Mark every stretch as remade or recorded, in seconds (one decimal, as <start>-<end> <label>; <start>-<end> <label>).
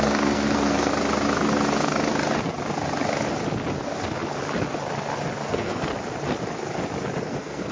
0.0-0.9 remade; 0.9-5.5 recorded; 5.5-5.9 remade; 5.9-7.2 recorded; 7.2-7.7 remade